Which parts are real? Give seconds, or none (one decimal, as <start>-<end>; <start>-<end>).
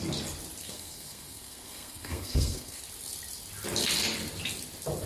0.0-0.6; 2.8-5.1